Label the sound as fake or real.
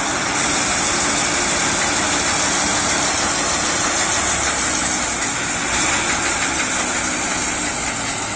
real